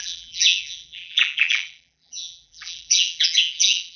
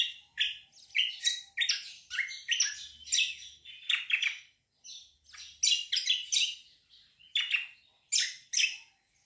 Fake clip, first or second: first